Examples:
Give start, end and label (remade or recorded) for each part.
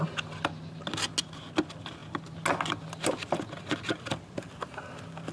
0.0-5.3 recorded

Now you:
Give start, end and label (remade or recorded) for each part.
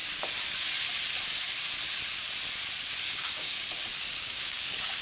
0.0-3.0 recorded; 3.0-3.6 remade; 3.6-4.2 recorded; 4.2-5.0 remade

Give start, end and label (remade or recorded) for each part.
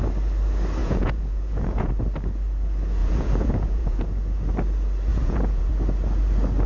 0.0-0.8 recorded; 0.8-1.9 remade; 1.9-3.0 recorded; 3.0-4.0 remade; 4.0-5.1 recorded; 5.1-5.7 remade; 5.7-6.7 recorded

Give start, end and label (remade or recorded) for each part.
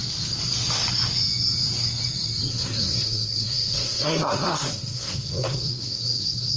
0.0-2.5 recorded; 2.5-6.6 remade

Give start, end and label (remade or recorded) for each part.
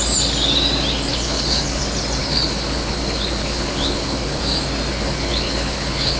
0.0-1.1 recorded; 1.1-1.8 remade; 1.8-2.2 recorded; 2.2-4.4 remade; 4.4-4.9 recorded; 4.9-6.2 remade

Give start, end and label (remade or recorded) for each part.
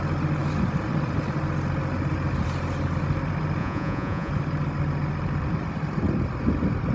0.0-3.6 recorded; 3.6-4.3 remade; 4.3-6.9 recorded